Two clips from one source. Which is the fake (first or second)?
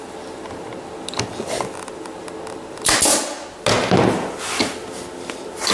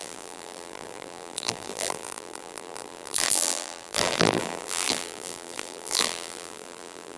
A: second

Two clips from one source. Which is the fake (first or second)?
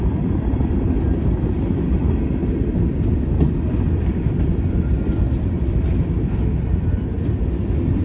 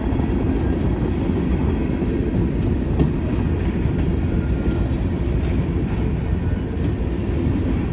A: first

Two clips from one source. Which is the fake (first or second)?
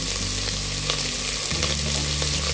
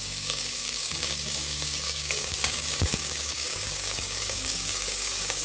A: second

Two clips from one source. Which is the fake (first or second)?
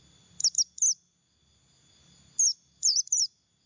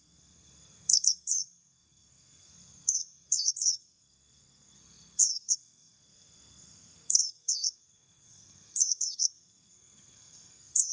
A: second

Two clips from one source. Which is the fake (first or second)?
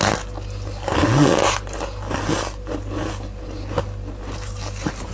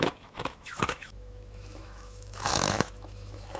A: second